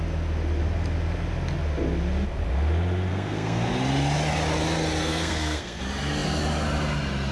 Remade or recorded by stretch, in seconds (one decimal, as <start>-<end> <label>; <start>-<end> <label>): 0.0-3.1 recorded; 3.1-3.7 remade; 3.7-5.0 recorded; 5.0-5.8 remade; 5.8-7.3 recorded